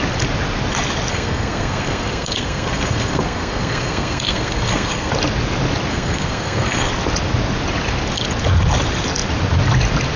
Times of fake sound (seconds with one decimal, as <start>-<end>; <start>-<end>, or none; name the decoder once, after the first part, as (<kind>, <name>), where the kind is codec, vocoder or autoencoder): 1.1-5.1 (codec, SNAC); 5.9-6.9